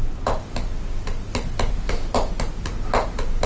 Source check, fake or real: real